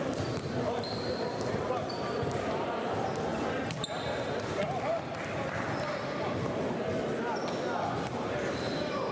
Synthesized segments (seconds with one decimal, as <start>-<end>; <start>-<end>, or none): 0.0-3.3; 7.9-9.1